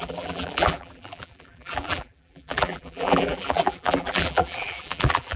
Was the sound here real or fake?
fake